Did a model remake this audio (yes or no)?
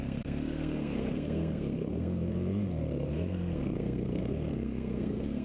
yes